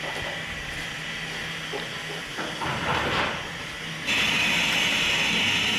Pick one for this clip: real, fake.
real